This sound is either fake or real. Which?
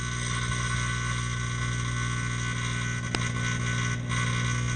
real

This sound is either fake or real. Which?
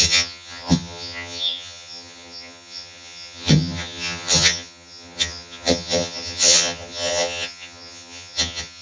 fake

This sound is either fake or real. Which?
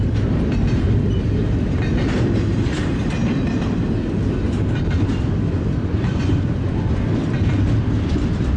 real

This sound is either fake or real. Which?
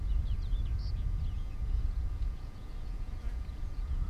fake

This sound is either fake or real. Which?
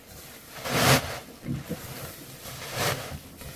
real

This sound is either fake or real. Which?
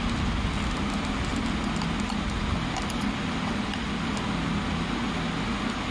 real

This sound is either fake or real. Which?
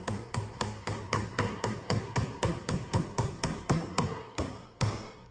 fake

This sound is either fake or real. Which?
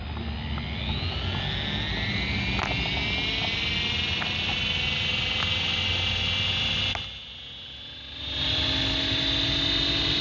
real